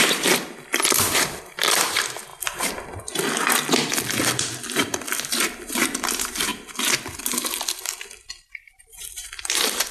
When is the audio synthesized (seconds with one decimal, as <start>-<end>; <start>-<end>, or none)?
0.0-6.5; 7.2-9.9